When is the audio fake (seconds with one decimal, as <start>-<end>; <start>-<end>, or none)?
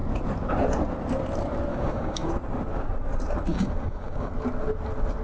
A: 1.7-2.3; 3.5-4.3